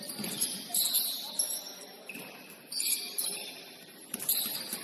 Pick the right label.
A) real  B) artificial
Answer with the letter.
B